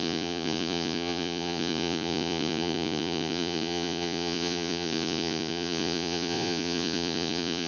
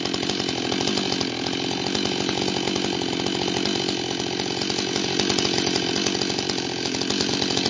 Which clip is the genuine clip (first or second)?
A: second